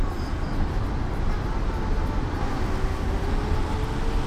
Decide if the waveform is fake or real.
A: real